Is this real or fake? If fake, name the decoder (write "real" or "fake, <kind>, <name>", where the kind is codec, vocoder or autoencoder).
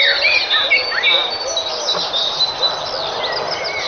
real